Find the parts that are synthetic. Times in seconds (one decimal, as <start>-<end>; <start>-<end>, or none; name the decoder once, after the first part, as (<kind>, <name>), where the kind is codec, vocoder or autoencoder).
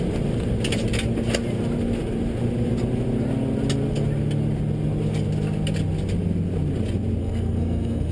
7.2-8.1 (codec, SNAC)